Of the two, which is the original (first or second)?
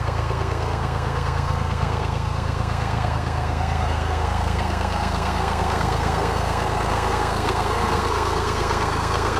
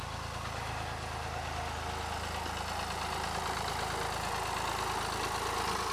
second